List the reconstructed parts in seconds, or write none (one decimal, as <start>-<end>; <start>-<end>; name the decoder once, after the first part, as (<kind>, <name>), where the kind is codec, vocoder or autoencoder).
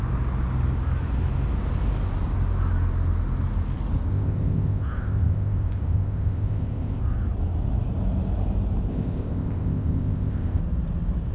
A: 4.1-7.0 (codec, ZipCodec); 8.9-10.6